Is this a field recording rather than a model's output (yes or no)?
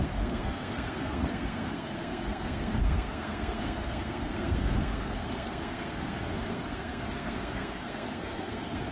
no